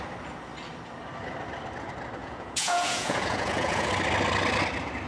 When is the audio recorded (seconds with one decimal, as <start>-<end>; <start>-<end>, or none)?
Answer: 0.0-2.2; 3.9-5.1